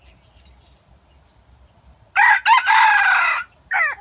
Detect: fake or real real